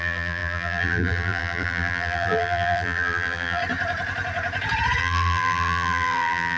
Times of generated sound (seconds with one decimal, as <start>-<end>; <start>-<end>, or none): 0.0-3.6; 5.0-6.6